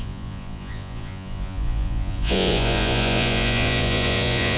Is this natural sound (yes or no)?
no